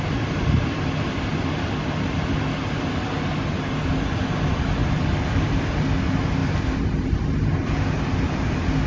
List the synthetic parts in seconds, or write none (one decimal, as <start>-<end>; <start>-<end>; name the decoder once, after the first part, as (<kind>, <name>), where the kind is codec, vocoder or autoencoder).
none